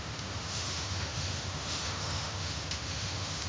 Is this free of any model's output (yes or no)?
no